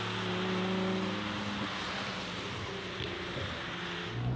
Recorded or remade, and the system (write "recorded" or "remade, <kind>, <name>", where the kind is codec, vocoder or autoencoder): recorded